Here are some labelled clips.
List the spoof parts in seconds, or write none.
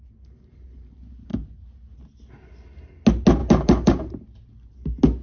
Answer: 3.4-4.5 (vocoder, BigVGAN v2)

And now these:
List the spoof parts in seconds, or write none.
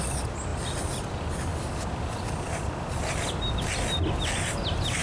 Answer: 0.5-1.1 (vocoder, BigVGAN v2); 1.5-3.5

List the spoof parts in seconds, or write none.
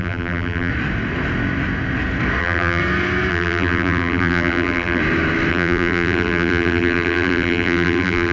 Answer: 0.0-0.7 (vocoder, BigVGAN v2); 2.4-2.8; 3.3-5.0; 5.5-8.3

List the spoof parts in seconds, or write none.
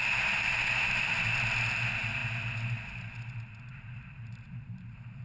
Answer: 3.7-5.2 (vocoder, BigVGAN v2)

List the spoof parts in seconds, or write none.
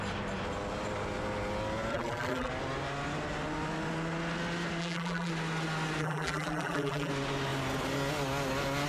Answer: 1.9-2.5 (vocoder, BigVGAN v2); 4.8-5.3; 6.0-7.1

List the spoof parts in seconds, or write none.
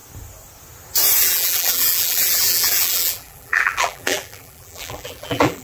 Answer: 1.2-5.6 (vocoder, BigVGAN v2)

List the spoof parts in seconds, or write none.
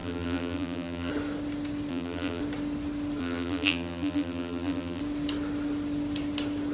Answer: 0.0-1.1 (vocoder, BigVGAN v2); 1.9-2.4; 3.2-5.0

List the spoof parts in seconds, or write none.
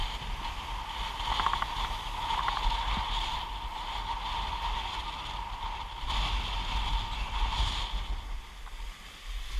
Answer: none